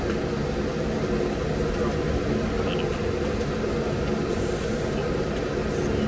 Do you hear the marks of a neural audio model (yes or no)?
no